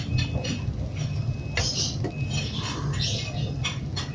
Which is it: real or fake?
real